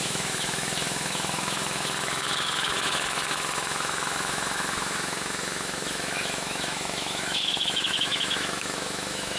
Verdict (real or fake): fake